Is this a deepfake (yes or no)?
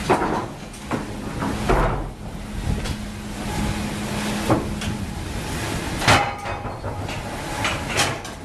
no